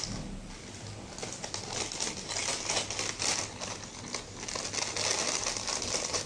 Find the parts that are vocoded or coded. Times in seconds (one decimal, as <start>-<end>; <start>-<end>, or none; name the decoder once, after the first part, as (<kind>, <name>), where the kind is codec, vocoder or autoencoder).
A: none